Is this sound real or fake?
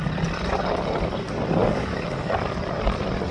real